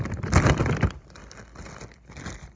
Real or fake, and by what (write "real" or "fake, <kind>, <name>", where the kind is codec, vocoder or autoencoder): real